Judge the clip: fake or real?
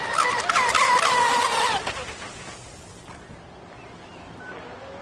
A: real